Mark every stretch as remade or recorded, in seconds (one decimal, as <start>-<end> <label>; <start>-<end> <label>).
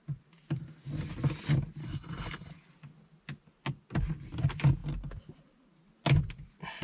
0.0-1.8 recorded; 1.8-2.5 remade; 2.5-6.8 recorded